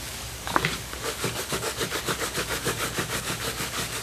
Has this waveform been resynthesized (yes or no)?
yes